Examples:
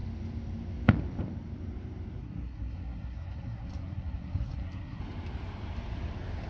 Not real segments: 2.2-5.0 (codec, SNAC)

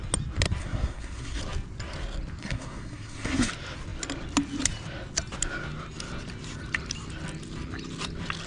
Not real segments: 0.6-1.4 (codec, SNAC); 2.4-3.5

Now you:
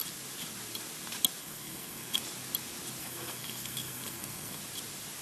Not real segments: 1.4-2.2 (codec, SNAC); 3.0-4.6

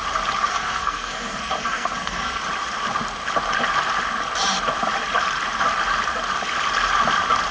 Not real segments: 0.5-2.4 (codec, SNAC)